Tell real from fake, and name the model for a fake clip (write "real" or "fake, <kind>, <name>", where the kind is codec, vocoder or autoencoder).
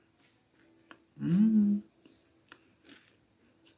real